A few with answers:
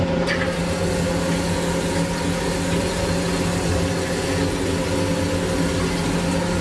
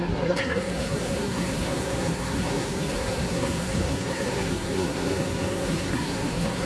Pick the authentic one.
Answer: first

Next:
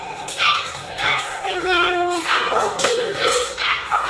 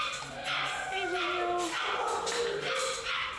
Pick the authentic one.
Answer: second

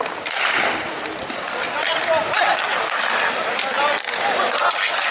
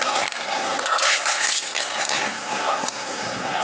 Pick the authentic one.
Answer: first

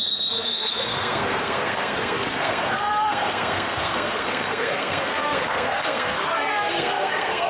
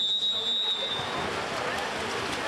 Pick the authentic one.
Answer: second